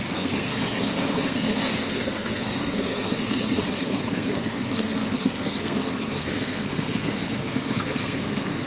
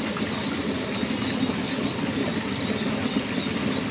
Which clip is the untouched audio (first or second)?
second